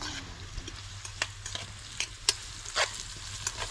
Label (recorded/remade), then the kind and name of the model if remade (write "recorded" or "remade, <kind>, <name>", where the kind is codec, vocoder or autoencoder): recorded